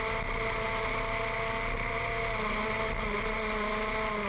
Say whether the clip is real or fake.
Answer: real